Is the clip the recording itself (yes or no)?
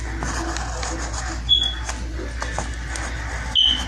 yes